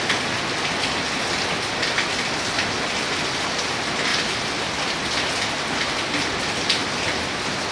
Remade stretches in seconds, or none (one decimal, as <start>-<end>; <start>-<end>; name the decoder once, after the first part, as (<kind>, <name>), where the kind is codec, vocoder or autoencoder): none